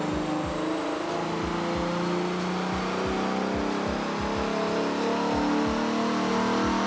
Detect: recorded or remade recorded